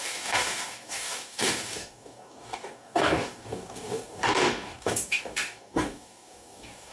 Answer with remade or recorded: remade